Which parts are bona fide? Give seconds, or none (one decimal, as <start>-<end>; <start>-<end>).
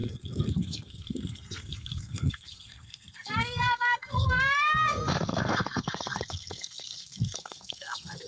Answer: none